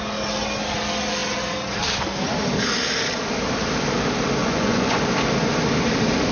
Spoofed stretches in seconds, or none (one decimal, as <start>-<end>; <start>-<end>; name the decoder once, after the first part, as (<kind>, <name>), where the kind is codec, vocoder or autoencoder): 4.4-5.0 (vocoder, Vocos)